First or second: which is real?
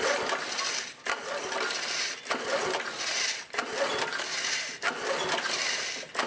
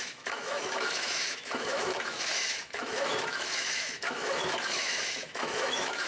first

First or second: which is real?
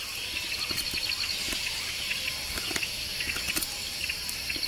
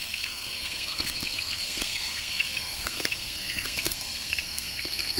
first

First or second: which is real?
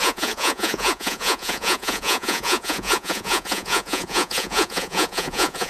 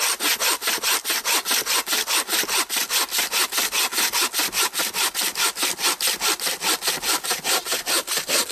second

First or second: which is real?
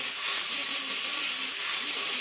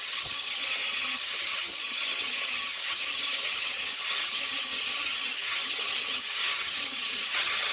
first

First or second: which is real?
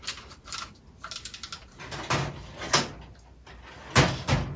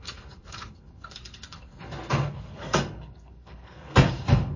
first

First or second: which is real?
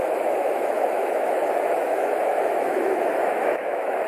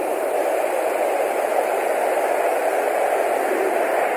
second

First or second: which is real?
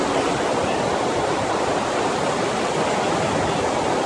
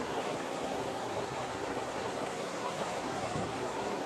first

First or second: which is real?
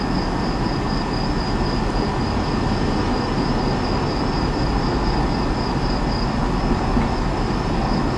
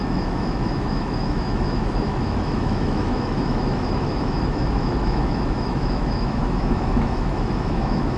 first